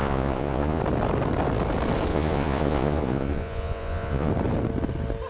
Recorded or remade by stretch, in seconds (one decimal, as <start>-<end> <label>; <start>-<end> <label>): 0.0-0.8 remade; 0.8-2.1 recorded; 2.1-4.3 remade; 4.3-5.3 recorded